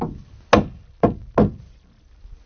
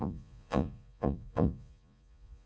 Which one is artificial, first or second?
second